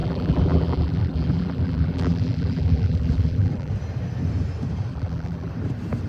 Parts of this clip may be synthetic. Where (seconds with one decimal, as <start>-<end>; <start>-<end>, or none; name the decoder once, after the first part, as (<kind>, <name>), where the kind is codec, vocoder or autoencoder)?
0.0-3.7 (vocoder, BigVGAN v2); 4.9-5.5